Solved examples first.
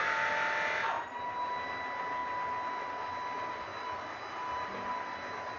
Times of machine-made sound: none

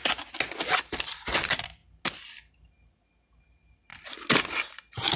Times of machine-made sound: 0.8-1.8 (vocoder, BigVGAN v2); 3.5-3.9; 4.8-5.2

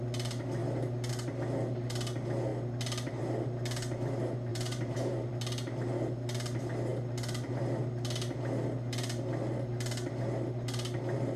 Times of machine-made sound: 4.5-5.3 (vocoder, BigVGAN v2)

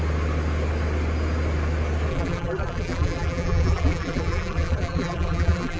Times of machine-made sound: 2.1-5.8 (vocoder, BigVGAN v2)

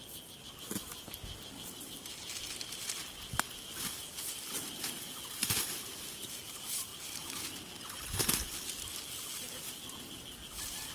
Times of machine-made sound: none

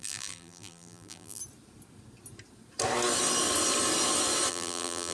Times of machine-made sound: 0.0-1.4 (vocoder, BigVGAN v2); 4.5-5.1

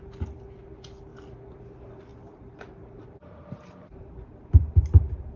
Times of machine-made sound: 2.1-5.4 (vocoder, BigVGAN v2)